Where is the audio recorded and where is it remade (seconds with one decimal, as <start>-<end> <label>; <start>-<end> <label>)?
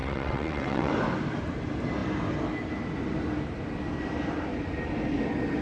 0.0-0.9 remade; 0.9-5.6 recorded